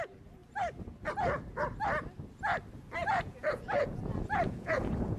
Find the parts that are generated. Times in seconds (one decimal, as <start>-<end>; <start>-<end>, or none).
3.0-5.2